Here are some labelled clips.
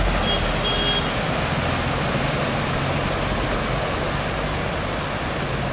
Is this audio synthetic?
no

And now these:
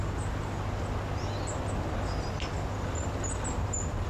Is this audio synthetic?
no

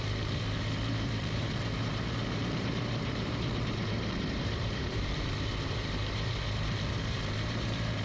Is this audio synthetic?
yes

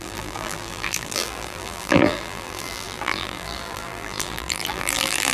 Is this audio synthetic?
yes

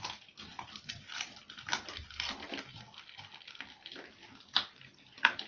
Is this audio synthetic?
no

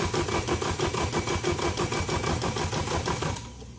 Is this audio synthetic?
no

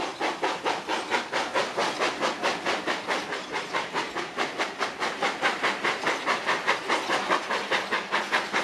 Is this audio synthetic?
no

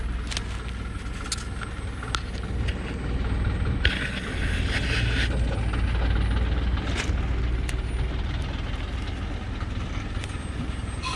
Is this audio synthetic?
no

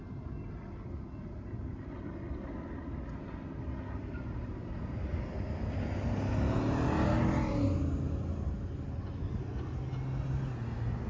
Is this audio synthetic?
no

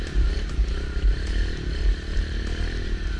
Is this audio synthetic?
no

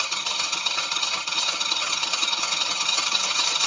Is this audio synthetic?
yes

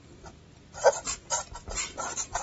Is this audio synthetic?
no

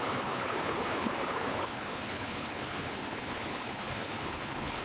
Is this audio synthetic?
yes